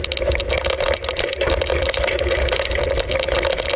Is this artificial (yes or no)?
no